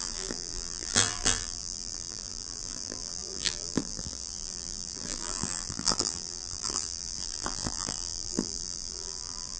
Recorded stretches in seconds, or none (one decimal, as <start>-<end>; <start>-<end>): none